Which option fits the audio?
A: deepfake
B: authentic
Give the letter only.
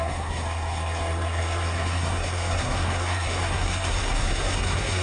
A